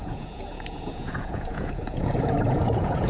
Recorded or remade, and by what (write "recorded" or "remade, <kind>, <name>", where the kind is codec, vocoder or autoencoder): remade, vocoder, Vocos